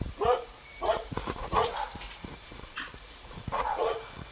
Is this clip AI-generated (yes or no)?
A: yes